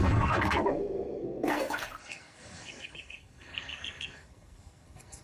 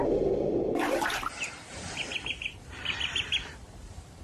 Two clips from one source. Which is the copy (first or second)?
first